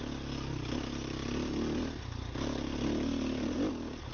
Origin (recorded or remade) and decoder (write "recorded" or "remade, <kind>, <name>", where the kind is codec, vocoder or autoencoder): recorded